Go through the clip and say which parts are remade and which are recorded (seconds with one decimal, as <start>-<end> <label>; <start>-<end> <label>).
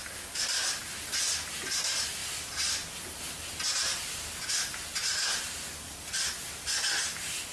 0.0-7.5 recorded